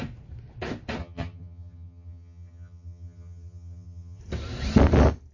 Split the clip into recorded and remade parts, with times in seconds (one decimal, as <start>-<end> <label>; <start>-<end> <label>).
0.0-1.0 recorded; 1.0-4.2 remade; 4.2-5.3 recorded